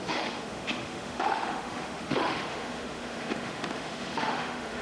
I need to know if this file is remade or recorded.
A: remade